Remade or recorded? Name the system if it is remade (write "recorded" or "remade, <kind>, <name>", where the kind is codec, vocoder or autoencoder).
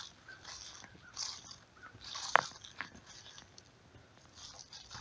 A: recorded